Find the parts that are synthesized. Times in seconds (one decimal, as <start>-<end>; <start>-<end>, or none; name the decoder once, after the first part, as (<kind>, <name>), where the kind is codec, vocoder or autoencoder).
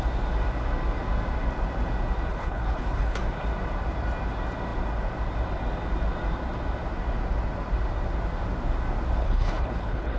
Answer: 2.3-3.2 (codec, HILCodec); 9.2-10.2